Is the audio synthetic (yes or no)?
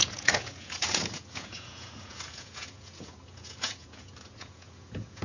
yes